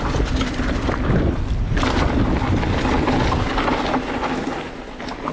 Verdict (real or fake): real